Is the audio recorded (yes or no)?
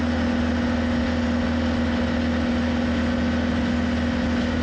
yes